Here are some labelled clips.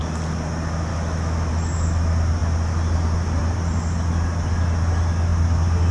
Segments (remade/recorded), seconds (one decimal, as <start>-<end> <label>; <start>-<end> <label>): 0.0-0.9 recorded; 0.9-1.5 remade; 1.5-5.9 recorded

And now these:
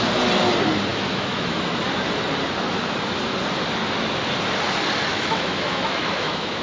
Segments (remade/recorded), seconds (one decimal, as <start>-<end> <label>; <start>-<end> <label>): 0.0-0.9 recorded; 0.9-1.6 remade; 1.6-5.1 recorded; 5.1-6.6 remade

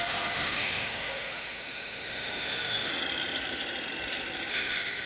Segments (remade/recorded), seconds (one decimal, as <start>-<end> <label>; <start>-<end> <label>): 0.0-2.9 remade; 2.9-4.5 recorded; 4.5-5.1 remade